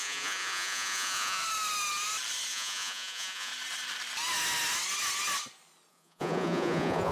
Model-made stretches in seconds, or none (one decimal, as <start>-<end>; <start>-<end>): 0.0-1.4; 2.5-3.5; 5.9-7.1

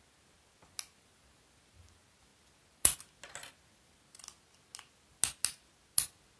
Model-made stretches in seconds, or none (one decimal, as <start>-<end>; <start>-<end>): none

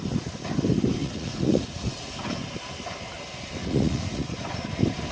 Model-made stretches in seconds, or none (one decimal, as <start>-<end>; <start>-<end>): 1.0-2.1; 3.6-4.5